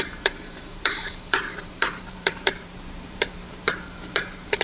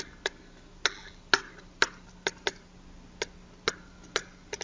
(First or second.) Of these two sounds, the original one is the second